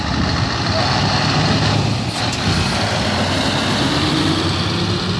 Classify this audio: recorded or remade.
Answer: recorded